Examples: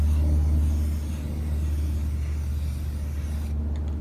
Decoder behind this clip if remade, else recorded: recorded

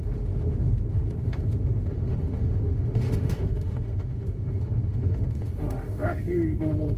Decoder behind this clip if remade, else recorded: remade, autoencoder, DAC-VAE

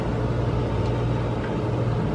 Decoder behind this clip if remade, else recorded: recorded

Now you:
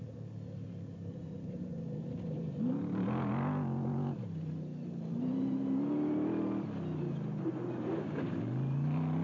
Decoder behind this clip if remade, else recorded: recorded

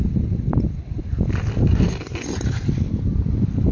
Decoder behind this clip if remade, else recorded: recorded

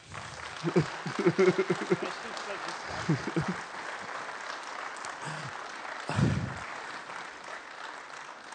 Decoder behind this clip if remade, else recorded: recorded